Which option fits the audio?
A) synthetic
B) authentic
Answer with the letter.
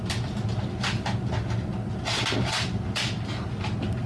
B